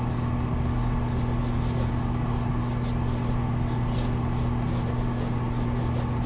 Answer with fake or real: real